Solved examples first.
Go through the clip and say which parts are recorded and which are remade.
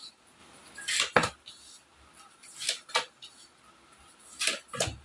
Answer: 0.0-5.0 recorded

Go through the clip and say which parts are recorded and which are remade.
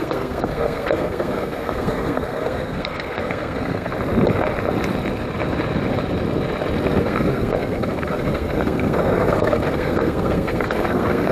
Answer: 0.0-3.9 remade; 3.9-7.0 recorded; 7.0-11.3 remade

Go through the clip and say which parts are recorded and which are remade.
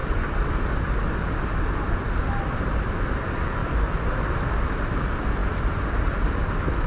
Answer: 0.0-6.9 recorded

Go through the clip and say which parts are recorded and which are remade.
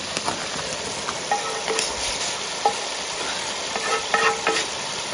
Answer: 0.0-3.9 recorded; 3.9-5.1 remade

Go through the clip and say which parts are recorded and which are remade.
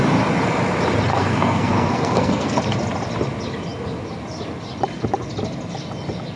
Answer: 0.0-1.1 recorded; 1.1-2.6 remade; 2.6-6.4 recorded